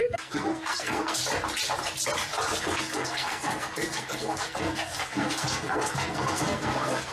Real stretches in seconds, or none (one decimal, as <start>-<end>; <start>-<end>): 1.2-2.6